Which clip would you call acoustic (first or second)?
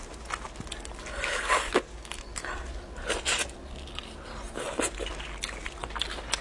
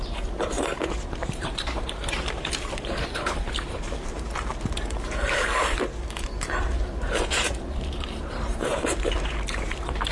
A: first